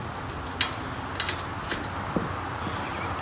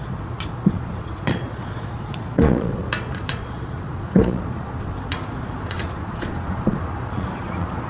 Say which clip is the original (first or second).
first